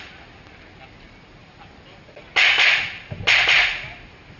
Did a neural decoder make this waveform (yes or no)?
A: no